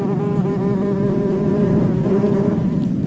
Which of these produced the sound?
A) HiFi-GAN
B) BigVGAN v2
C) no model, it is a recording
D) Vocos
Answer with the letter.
B